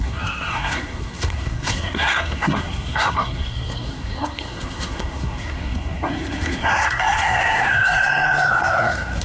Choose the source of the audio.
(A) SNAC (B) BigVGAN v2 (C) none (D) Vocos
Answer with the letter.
A